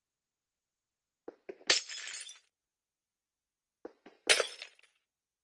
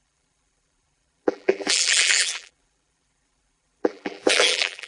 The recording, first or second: first